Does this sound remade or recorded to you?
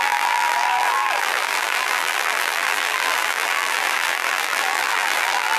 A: remade